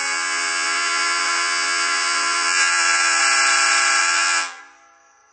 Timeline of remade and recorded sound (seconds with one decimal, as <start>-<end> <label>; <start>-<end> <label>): 0.0-3.2 remade; 3.2-4.0 recorded; 4.0-4.6 remade; 4.6-5.3 recorded